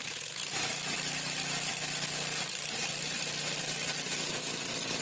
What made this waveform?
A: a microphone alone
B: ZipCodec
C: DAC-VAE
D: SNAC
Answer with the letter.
A